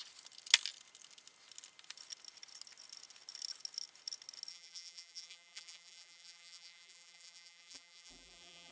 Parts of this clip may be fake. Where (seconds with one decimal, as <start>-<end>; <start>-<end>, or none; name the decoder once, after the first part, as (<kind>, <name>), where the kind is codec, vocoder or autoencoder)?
4.5-8.7 (vocoder, BigVGAN v2)

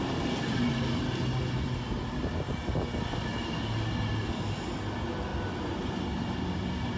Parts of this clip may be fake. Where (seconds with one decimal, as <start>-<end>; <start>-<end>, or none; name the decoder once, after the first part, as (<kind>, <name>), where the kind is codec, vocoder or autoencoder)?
none

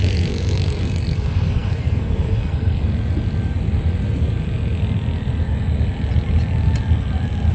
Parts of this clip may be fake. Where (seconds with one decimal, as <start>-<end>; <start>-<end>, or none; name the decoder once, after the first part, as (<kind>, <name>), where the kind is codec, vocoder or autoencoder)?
0.0-2.9 (codec, SNAC)

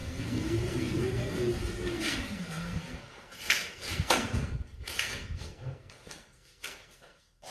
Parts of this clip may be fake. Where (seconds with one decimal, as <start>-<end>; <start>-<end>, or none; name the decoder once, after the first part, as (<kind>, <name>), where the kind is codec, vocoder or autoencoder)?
0.0-7.5 (codec, SNAC)

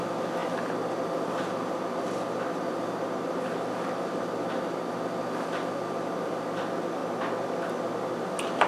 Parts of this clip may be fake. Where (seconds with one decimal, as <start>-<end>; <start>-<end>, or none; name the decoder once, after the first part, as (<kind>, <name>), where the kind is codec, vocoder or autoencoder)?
0.4-1.4 (vocoder, BigVGAN v2)

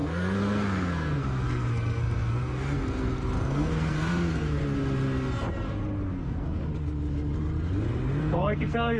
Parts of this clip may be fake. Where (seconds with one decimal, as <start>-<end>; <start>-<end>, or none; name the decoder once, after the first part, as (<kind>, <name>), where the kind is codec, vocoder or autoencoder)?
0.0-4.6 (codec, SNAC); 6.1-6.6; 8.2-9.0

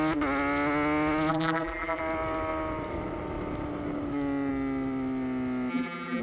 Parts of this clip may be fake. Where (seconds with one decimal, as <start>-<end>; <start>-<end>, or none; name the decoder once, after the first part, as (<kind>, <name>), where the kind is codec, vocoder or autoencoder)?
1.3-2.0 (vocoder, BigVGAN v2); 5.7-6.2